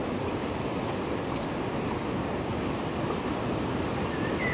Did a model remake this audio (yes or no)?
no